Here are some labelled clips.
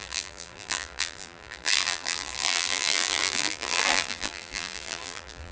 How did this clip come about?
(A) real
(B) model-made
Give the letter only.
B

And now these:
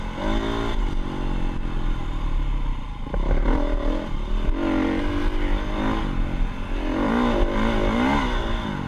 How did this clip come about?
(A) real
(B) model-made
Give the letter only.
A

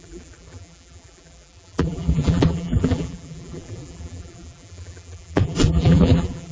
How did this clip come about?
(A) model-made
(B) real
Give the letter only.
A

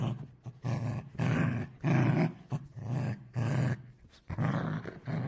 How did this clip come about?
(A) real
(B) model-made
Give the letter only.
A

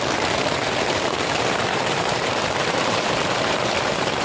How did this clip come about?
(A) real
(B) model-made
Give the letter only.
B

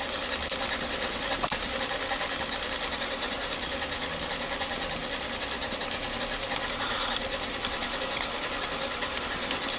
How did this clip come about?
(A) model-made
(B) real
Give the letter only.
B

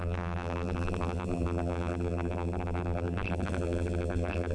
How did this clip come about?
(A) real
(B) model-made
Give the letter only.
B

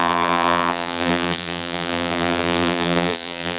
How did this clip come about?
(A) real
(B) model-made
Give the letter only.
B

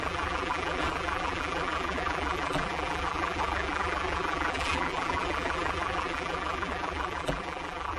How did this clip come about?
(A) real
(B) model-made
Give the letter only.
B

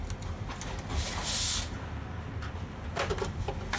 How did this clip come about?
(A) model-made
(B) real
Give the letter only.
B